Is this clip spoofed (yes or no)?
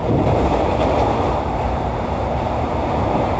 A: yes